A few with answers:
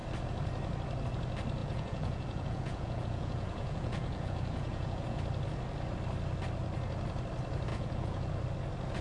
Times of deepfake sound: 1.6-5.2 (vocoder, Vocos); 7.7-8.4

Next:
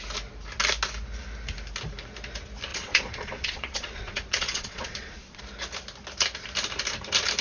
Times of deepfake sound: 2.7-5.4 (vocoder, Vocos)

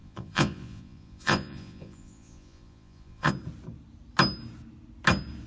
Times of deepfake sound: 0.0-3.3 (vocoder, Vocos)

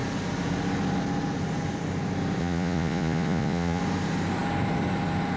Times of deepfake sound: 2.4-3.8 (vocoder, Vocos)

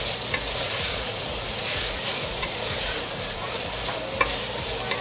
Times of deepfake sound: 0.6-3.6 (vocoder, Vocos)

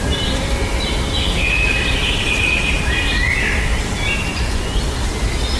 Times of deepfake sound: 4.3-4.8 (vocoder, Vocos)

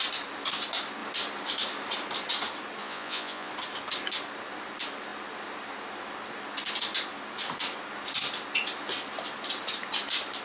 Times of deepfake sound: 2.8-3.5 (vocoder, Vocos)